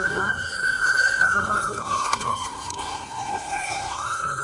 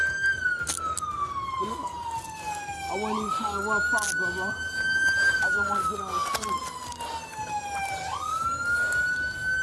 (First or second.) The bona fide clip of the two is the second